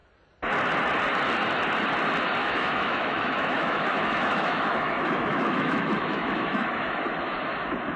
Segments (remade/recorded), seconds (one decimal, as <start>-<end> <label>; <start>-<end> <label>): 0.0-2.4 recorded; 2.4-7.0 remade; 7.0-8.0 recorded